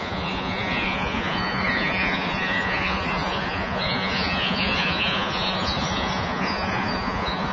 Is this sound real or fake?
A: fake